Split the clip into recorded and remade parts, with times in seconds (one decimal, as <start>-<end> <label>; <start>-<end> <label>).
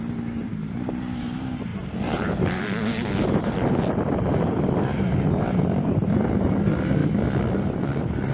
0.0-7.0 remade; 7.0-7.5 recorded; 7.5-8.3 remade